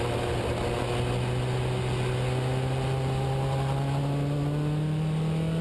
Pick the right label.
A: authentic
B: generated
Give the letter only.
A